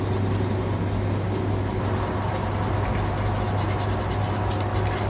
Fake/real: real